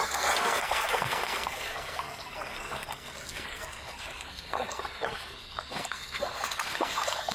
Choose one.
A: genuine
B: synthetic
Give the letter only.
B